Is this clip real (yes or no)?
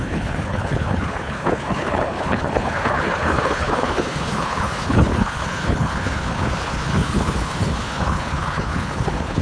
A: no